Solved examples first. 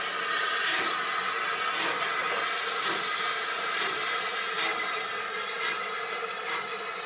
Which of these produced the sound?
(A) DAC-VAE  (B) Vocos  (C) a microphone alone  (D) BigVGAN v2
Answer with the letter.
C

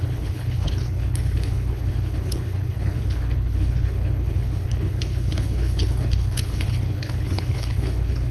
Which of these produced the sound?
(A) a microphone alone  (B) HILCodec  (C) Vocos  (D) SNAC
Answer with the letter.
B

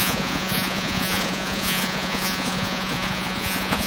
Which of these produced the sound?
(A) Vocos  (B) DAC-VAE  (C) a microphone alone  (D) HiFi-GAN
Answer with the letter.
A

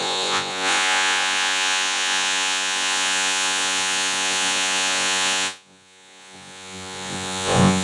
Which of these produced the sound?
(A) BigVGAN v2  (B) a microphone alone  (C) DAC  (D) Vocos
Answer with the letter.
D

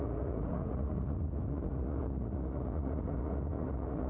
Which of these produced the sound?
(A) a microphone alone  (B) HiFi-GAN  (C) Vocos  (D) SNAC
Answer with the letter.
C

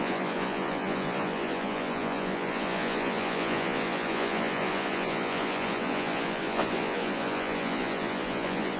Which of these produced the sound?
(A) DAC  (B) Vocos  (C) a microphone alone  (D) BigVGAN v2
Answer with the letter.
B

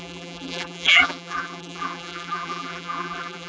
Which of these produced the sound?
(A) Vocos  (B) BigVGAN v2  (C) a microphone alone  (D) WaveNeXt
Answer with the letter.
B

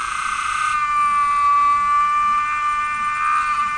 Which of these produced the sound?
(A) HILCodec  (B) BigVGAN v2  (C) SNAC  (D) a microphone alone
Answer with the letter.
D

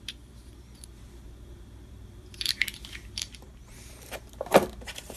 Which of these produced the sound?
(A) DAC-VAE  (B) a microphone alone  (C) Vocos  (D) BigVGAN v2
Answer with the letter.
D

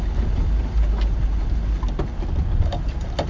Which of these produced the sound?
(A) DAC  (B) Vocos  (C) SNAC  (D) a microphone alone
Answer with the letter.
D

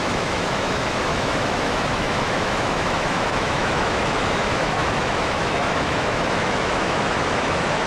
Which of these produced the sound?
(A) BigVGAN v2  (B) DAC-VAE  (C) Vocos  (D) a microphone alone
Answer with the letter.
B